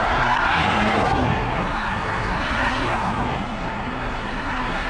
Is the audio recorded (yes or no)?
no